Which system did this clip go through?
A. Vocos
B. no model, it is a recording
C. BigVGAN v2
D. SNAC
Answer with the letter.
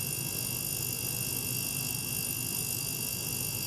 B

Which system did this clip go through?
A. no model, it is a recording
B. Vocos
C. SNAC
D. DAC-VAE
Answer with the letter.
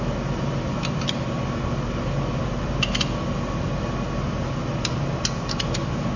A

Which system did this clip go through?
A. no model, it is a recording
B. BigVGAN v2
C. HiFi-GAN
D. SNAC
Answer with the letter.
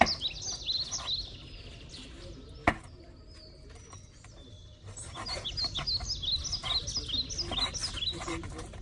A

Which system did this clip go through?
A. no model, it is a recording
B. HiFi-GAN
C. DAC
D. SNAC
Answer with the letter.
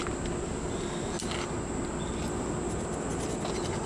A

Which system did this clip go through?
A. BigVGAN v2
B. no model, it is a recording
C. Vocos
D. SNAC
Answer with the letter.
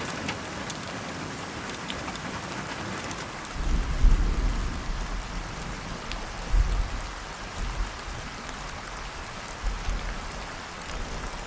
B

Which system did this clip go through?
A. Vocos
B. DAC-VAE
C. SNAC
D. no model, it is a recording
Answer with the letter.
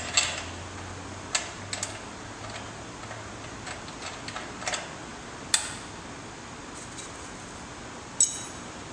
D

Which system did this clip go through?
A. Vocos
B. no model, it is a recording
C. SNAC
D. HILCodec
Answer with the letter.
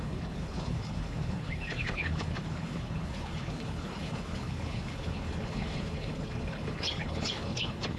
D